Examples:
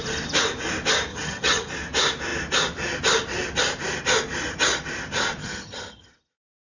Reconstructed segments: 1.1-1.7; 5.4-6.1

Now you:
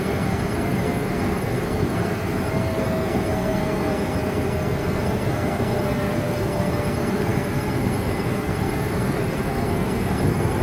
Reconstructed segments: 0.0-10.6

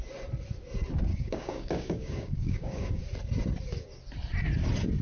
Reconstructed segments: 1.1-3.0

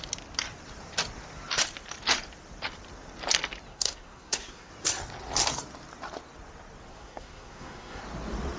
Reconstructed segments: 3.7-4.7; 6.9-8.0

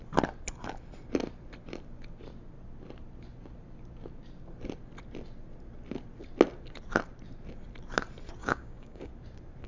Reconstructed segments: 8.4-9.1

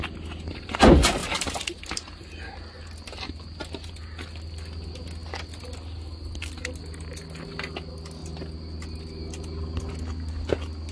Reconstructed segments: none

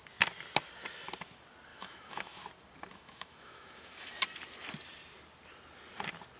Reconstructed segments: 1.7-2.4; 2.9-4.1